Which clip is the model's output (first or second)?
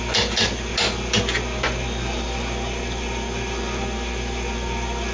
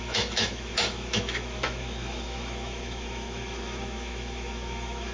second